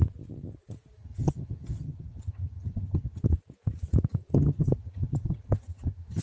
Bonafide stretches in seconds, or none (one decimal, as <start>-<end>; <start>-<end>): 0.0-1.0; 3.2-4.3